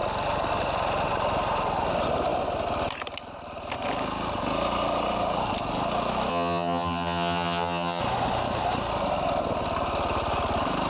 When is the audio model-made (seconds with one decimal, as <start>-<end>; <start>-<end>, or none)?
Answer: 6.3-8.0